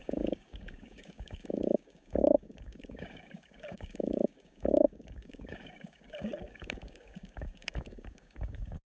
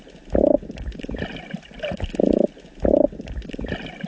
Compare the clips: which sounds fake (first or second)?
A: first